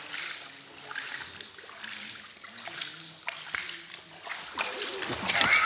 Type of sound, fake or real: real